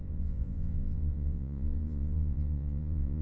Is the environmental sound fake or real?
fake